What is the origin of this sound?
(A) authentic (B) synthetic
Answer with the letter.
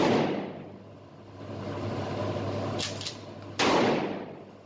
A